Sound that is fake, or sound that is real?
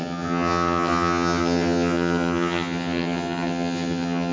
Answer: fake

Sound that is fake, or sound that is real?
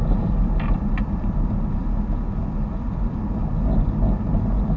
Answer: real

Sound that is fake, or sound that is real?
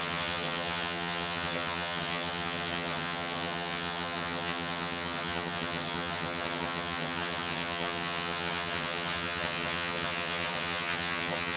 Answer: fake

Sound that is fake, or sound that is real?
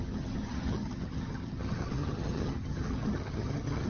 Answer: fake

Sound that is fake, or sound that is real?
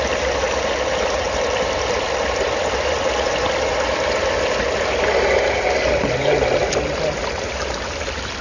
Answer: real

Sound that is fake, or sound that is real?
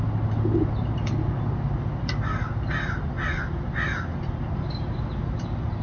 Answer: real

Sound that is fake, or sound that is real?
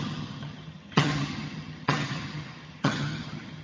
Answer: fake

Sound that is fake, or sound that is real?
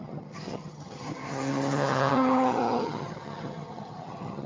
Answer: fake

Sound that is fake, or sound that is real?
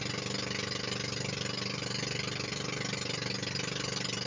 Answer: real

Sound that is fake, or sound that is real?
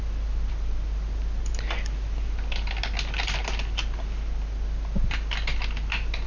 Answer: real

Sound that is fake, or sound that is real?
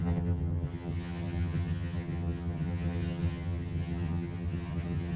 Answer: fake